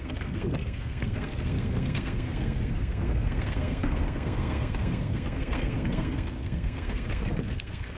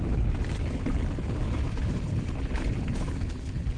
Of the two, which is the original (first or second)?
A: second